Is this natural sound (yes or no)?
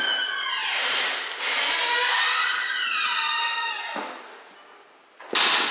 yes